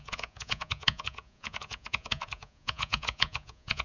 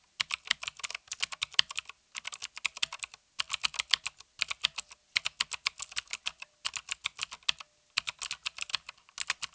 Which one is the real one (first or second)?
second